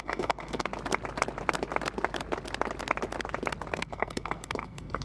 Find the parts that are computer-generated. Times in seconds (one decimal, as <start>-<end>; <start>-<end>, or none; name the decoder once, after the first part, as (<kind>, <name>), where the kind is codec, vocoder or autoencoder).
0.0-0.7 (codec, SNAC); 3.7-5.0